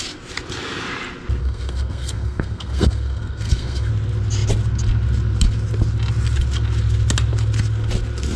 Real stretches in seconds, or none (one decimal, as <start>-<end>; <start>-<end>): 0.0-1.4; 3.9-8.4